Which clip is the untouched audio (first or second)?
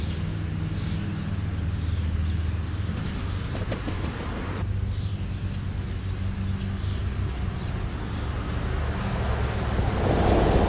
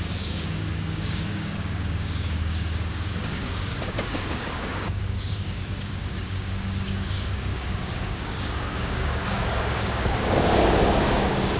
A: first